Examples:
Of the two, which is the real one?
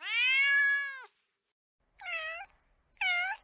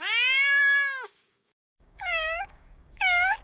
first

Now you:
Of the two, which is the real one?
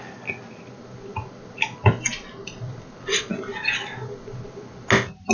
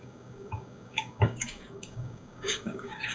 first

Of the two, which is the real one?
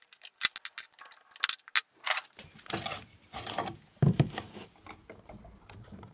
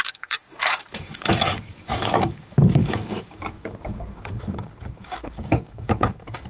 first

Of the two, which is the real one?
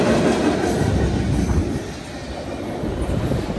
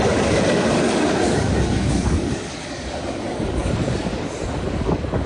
first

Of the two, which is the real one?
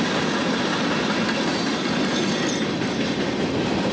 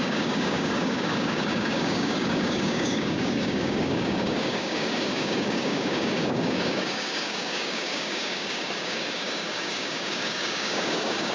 first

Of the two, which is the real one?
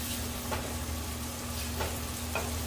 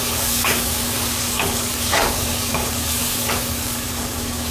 first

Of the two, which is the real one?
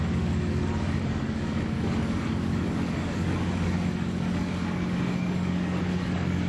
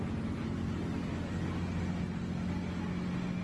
second